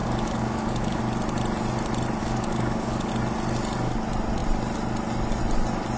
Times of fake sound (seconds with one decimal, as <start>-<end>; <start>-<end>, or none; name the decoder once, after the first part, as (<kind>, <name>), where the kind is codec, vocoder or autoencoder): 0.0-1.0 (codec, DAC); 2.2-3.1